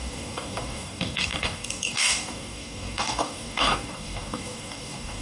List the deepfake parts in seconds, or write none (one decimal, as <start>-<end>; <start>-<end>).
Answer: 0.0-5.2